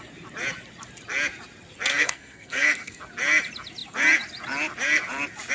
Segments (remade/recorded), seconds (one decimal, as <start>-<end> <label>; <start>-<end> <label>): 0.0-1.9 recorded; 1.9-3.0 remade; 3.0-5.5 recorded